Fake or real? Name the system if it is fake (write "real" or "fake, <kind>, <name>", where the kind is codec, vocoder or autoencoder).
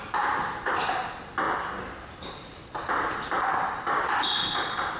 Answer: real